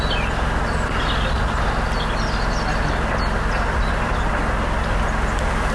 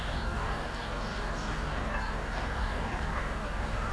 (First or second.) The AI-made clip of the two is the second